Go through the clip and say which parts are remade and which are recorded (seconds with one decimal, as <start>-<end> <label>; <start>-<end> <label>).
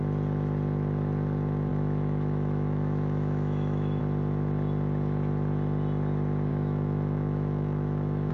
0.0-1.7 recorded; 1.7-4.0 remade; 4.0-6.5 recorded; 6.5-8.3 remade